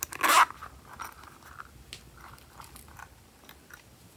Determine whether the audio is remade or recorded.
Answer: recorded